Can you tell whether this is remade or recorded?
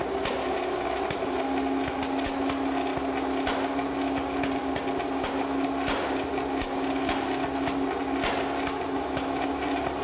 recorded